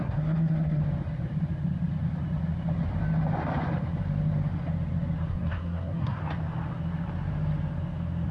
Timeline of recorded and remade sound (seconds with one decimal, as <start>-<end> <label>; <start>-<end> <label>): 0.0-0.8 remade; 0.8-5.3 recorded; 5.3-6.2 remade; 6.2-8.3 recorded